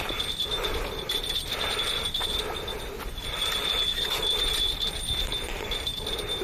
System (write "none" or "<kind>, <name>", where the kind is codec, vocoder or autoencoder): none